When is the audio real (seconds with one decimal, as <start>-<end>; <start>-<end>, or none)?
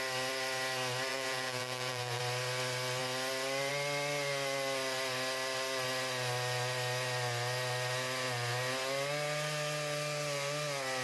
0.0-1.1; 2.2-11.0